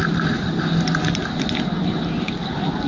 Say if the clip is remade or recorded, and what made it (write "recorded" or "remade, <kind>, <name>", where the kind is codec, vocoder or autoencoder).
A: recorded